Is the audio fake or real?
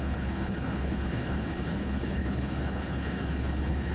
fake